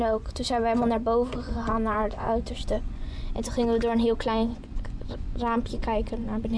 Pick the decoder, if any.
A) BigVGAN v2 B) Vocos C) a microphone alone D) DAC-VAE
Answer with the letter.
B